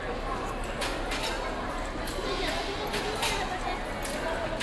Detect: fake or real real